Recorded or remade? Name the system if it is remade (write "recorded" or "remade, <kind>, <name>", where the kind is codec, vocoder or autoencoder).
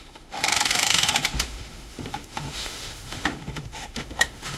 remade, autoencoder, DAC-VAE